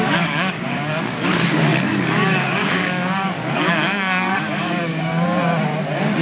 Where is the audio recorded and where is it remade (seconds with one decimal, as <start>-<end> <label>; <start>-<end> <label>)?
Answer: 0.0-5.1 remade; 5.1-6.2 recorded